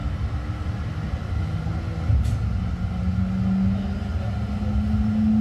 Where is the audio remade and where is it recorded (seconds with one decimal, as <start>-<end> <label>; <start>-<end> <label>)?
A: 0.0-5.4 recorded